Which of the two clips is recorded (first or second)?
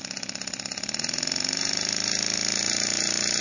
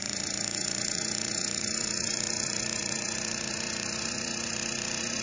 first